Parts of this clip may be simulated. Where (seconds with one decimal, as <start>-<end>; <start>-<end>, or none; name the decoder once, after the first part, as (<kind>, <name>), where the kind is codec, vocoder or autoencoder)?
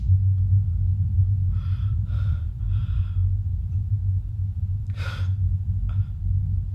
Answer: 1.2-2.8 (vocoder, BigVGAN v2); 3.5-5.1